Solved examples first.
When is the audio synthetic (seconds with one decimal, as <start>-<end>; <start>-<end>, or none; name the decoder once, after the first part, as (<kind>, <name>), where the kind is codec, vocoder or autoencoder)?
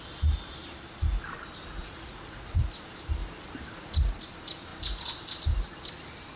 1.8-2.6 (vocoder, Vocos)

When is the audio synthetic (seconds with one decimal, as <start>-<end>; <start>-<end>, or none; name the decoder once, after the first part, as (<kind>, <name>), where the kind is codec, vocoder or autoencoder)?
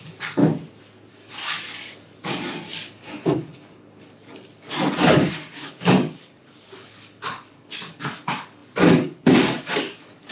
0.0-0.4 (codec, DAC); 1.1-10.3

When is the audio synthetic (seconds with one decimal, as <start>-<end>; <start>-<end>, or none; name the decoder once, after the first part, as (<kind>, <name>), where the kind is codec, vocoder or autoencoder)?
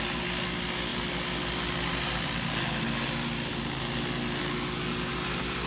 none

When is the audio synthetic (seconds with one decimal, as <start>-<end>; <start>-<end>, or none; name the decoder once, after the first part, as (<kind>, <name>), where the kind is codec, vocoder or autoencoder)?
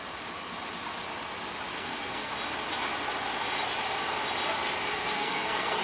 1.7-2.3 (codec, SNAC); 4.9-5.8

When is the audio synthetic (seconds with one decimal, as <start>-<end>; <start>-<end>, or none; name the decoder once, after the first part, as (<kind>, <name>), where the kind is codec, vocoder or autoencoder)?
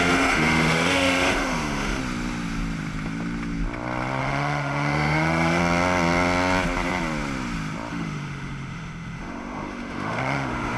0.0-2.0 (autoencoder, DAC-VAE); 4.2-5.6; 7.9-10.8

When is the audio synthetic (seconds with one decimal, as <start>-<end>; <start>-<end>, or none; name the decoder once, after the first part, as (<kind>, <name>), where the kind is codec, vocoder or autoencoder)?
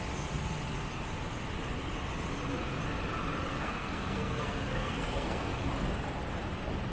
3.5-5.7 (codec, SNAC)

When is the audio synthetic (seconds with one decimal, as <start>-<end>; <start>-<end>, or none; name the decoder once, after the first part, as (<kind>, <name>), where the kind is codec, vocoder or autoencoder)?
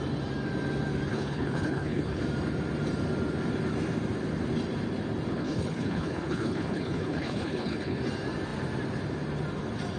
1.1-2.2 (codec, HILCodec); 5.3-8.0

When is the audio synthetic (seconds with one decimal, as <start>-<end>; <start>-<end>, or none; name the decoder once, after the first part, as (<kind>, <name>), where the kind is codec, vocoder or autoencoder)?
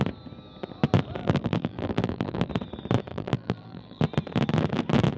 1.2-2.5 (vocoder, BigVGAN v2); 3.1-4.0